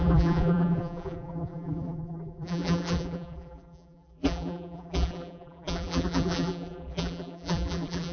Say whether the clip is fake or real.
fake